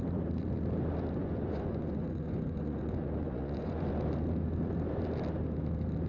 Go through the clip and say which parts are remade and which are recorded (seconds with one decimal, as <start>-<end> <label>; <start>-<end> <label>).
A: 0.0-1.2 recorded; 1.2-3.9 remade; 3.9-6.1 recorded